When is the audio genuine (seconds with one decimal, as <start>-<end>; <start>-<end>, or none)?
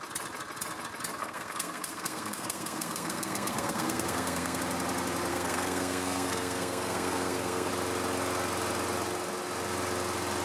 0.0-1.2; 4.6-5.3; 7.7-10.4